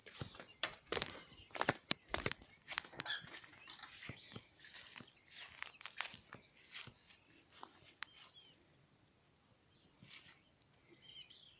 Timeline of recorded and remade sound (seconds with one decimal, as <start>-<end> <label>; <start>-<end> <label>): 0.0-4.6 remade; 4.6-11.6 recorded